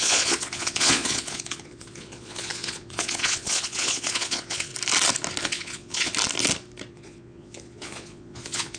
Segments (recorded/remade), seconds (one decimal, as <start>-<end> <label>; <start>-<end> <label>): 0.0-4.7 remade; 4.7-5.4 recorded; 5.4-6.1 remade; 6.1-6.9 recorded; 6.9-8.8 remade

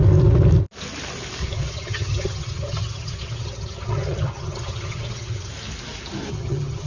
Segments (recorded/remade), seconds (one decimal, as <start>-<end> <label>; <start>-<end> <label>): 0.0-1.4 recorded; 1.4-5.5 remade; 5.5-6.3 recorded; 6.3-6.9 remade